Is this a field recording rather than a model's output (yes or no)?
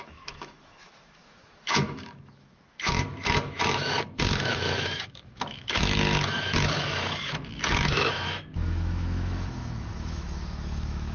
no